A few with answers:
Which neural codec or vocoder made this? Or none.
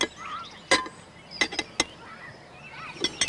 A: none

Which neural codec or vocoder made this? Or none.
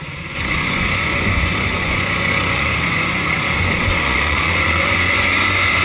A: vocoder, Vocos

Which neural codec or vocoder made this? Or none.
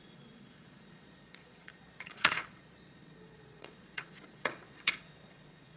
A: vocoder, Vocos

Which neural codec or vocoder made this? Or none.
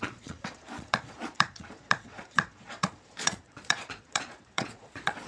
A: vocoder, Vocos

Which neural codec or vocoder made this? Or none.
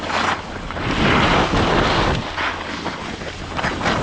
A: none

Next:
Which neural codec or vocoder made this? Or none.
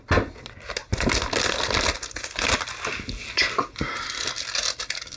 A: none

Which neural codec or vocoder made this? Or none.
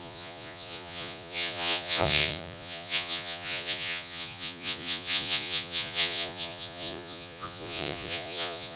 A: vocoder, Vocos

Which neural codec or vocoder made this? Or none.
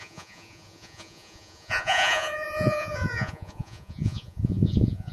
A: vocoder, Vocos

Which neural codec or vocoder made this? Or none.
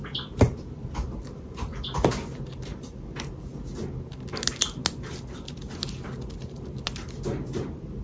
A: none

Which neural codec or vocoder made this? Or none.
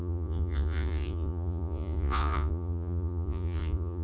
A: vocoder, Vocos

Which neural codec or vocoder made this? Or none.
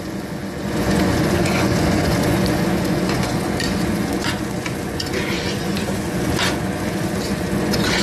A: vocoder, Vocos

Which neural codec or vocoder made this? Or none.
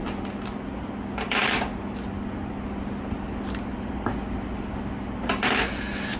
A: none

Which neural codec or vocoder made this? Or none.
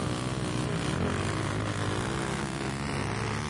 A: none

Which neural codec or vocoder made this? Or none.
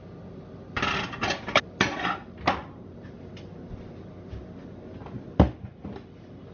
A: none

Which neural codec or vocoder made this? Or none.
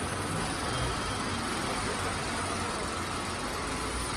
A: none